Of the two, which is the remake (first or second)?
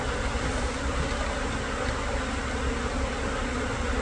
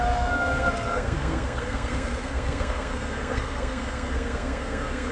second